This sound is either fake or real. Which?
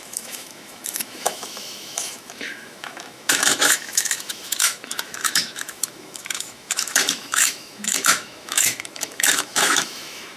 fake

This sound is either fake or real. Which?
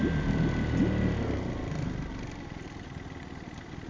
real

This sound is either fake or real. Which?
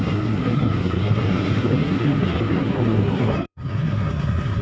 fake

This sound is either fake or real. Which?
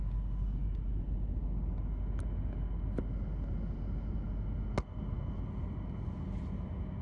real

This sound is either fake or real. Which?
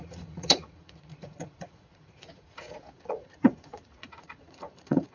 fake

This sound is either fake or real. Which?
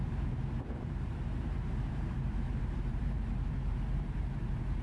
fake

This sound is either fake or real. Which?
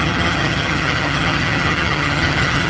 fake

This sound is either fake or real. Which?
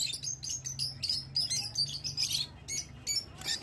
real